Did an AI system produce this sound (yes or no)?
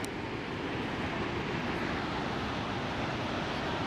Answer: no